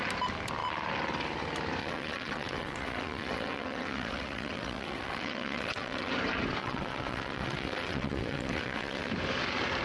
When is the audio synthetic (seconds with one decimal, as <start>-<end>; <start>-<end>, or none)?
1.8-6.1; 6.6-9.1